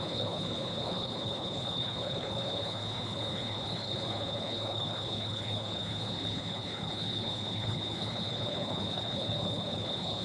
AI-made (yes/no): yes